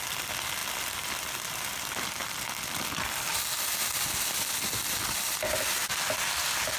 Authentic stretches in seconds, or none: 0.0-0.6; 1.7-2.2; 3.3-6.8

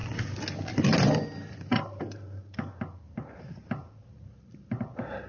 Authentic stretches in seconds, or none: 0.0-1.5